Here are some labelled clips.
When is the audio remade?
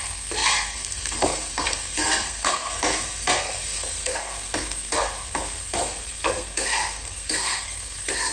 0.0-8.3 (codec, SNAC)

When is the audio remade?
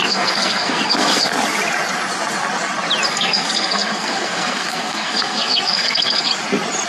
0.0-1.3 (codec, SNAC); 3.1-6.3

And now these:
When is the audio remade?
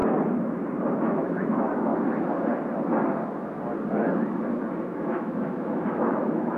0.9-1.9 (autoencoder, DAC-VAE); 4.8-6.6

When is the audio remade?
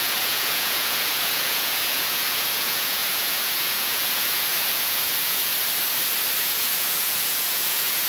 0.0-5.5 (vocoder, Vocos); 6.4-8.1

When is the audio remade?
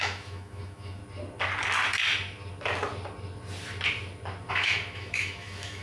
0.0-1.0 (autoencoder, DAC-VAE); 4.5-5.8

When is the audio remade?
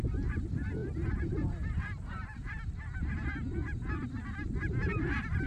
4.9-5.5 (vocoder, BigVGAN v2)